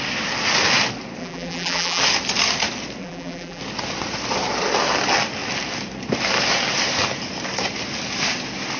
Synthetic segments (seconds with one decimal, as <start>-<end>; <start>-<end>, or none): 1.2-2.0; 3.0-3.6